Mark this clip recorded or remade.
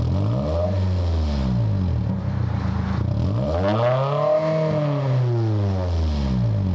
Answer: recorded